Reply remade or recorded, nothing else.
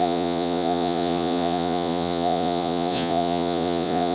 remade